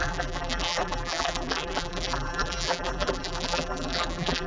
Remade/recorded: remade